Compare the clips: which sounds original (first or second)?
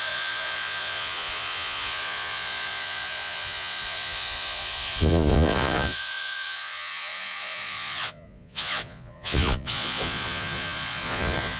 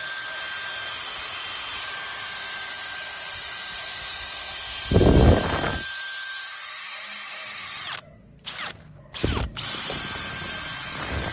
second